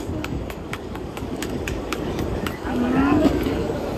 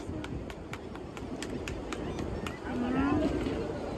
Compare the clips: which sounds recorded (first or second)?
second